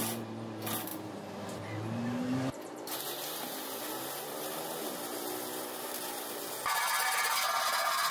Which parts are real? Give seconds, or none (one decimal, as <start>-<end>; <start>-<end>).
0.0-8.1